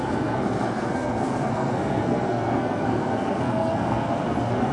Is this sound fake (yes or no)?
yes